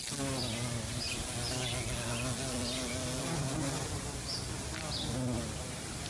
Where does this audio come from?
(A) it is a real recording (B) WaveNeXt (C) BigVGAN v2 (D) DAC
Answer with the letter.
A